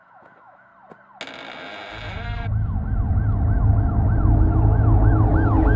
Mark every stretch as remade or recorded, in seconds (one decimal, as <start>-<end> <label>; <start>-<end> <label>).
0.0-0.7 remade; 0.7-3.6 recorded; 3.6-5.8 remade